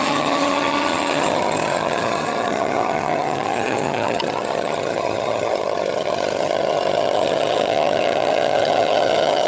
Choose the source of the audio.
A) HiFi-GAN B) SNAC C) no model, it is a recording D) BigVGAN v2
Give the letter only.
A